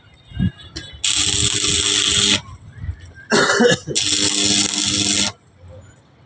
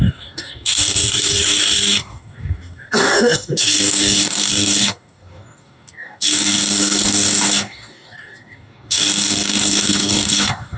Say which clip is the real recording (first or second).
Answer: first